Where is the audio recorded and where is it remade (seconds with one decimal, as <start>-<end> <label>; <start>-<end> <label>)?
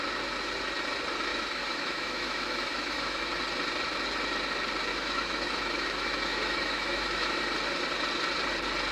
0.0-1.3 recorded; 1.3-3.3 remade; 3.3-4.9 recorded; 4.9-7.4 remade; 7.4-8.9 recorded